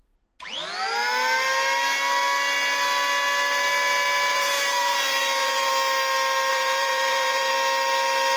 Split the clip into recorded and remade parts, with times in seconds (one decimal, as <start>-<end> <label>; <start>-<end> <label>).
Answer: 0.0-4.3 recorded; 4.3-5.7 remade; 5.7-6.5 recorded; 6.5-7.5 remade; 7.5-8.4 recorded